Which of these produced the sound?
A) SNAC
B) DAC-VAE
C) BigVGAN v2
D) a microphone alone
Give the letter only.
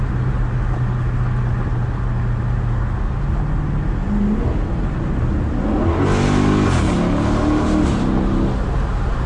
D